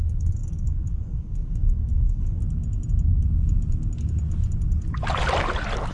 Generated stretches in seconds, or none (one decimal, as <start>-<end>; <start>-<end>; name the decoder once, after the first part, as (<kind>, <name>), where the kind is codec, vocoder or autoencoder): 0.0-2.4 (codec, SNAC)